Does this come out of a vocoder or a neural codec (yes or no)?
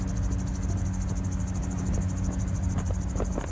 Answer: no